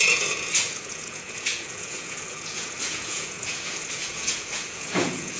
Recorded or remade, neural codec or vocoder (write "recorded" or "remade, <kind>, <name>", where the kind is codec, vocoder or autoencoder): remade, vocoder, Vocos